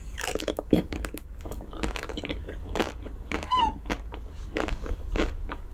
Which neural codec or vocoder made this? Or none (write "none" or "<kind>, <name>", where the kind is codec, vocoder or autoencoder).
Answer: codec, DAC